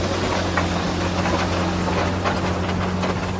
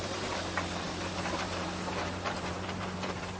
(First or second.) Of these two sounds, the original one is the first